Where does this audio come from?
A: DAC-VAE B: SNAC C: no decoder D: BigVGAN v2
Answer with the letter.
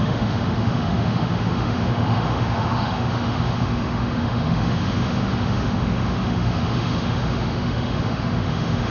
A